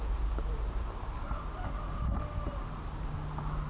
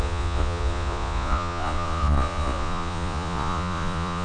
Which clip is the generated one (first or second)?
second